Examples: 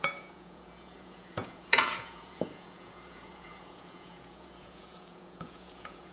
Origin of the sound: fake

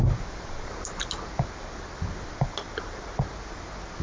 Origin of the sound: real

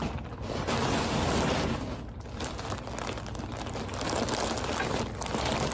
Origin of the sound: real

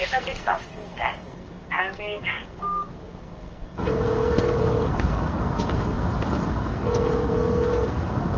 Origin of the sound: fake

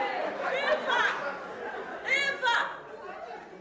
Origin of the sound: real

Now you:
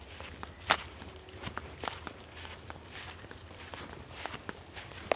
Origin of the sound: real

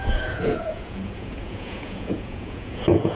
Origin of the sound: fake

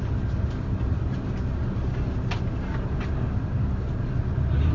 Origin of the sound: real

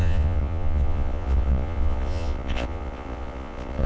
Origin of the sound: fake